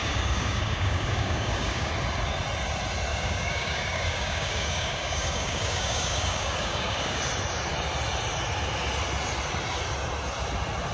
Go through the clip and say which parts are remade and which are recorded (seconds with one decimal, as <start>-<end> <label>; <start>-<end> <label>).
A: 0.0-1.9 remade; 1.9-3.1 recorded; 3.1-7.2 remade; 7.2-10.9 recorded